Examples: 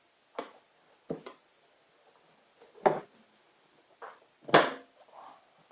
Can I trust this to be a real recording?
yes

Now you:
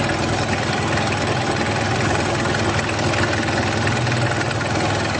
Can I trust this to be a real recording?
yes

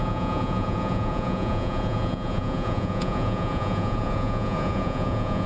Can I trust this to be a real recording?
no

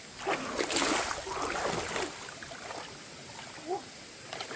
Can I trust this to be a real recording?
yes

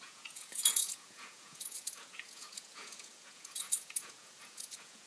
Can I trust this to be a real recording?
no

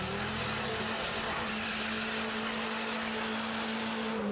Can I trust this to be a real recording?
yes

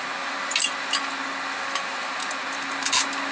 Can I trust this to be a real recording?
yes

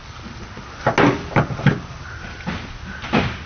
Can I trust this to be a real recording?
yes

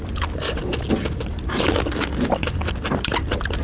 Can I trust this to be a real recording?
yes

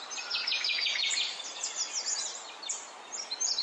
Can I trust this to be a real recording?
yes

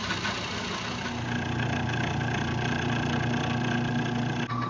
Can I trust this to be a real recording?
yes